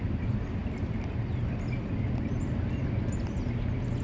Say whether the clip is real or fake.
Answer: real